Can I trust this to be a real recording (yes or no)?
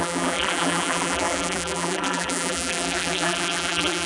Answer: no